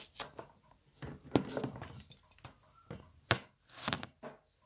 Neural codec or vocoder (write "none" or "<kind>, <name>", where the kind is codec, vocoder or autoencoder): none